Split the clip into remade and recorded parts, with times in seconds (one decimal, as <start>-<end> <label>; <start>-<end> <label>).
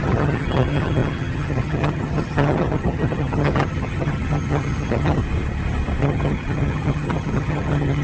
0.0-5.2 remade; 5.2-6.0 recorded; 6.0-8.0 remade